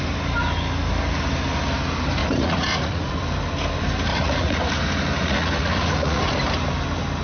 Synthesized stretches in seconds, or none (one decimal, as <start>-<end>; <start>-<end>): 2.2-3.2; 4.1-4.7; 5.2-6.2